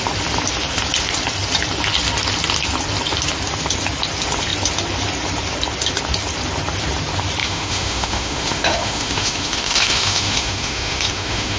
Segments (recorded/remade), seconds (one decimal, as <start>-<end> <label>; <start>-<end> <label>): 0.0-7.4 recorded; 7.4-11.6 remade

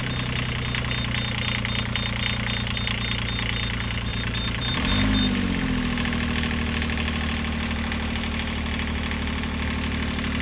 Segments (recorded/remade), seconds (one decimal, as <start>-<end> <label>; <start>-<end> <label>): 0.0-4.1 recorded; 4.1-5.2 remade; 5.2-10.4 recorded

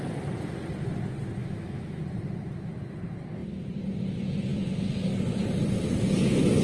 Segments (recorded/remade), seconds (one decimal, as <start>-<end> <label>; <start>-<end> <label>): 0.0-1.4 recorded; 1.4-2.0 remade; 2.0-6.6 recorded

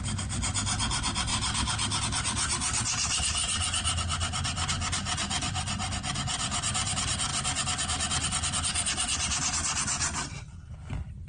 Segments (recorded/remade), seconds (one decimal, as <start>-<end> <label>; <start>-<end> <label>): 0.0-11.3 recorded

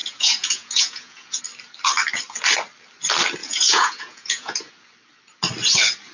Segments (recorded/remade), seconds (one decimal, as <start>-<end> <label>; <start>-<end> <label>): 0.0-1.4 remade; 1.4-3.4 recorded; 3.4-4.7 remade; 4.7-6.1 recorded

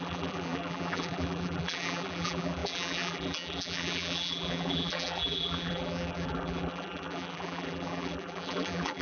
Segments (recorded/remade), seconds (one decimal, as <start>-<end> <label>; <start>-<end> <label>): 0.0-9.0 remade

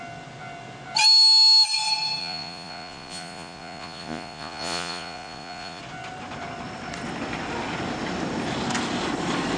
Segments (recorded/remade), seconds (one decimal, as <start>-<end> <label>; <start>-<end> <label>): 0.0-2.2 recorded; 2.2-5.8 remade; 5.8-9.6 recorded

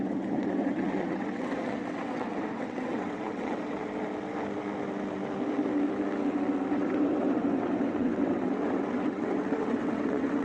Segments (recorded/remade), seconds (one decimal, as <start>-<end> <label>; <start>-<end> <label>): 0.0-3.8 remade; 3.8-6.7 recorded; 6.7-10.4 remade